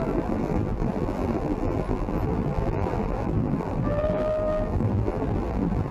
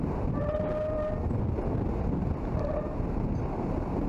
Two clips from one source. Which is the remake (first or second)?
first